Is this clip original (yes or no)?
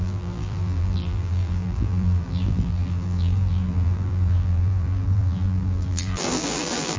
no